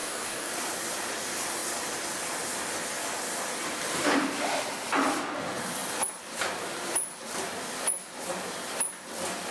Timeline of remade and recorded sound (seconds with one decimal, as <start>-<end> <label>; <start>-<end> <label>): 0.0-0.5 remade; 0.5-9.5 recorded